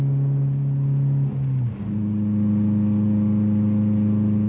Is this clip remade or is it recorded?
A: recorded